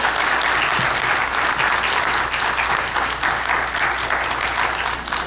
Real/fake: real